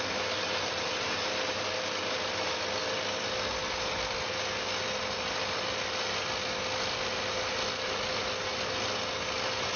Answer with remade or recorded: recorded